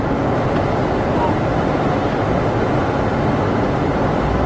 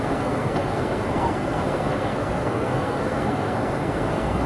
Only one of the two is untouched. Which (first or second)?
first